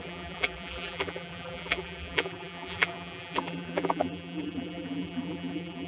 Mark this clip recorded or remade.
remade